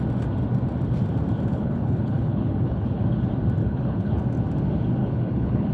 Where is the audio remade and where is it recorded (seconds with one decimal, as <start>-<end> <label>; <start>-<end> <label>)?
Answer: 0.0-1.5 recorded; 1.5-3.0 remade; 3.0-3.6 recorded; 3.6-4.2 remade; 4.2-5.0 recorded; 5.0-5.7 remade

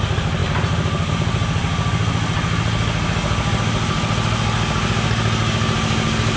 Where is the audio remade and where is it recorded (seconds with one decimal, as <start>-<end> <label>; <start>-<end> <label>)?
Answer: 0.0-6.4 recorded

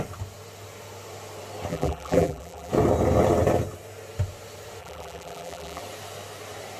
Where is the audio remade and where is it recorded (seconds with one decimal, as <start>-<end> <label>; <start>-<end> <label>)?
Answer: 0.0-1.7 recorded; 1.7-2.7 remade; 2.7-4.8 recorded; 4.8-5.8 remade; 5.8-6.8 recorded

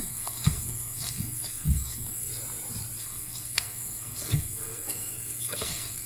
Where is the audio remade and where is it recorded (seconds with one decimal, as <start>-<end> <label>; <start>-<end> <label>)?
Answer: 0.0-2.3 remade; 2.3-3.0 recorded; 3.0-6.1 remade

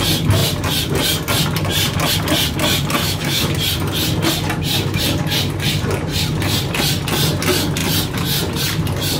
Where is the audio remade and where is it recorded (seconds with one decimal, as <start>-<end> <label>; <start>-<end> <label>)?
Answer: 0.0-3.0 recorded; 3.0-3.5 remade; 3.5-9.2 recorded